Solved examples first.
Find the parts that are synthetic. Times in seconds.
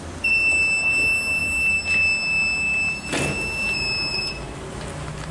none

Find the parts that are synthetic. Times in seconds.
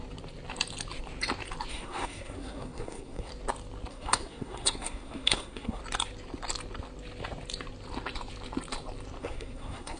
1.7-3.3 (codec, SNAC); 3.9-5.8; 9.2-10.0